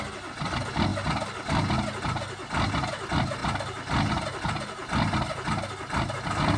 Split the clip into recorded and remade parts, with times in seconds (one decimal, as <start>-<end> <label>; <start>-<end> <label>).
0.0-6.6 recorded